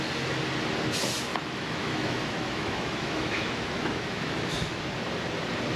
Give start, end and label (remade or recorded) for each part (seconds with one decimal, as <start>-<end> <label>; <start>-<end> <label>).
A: 0.0-1.3 recorded; 1.3-4.8 remade; 4.8-5.8 recorded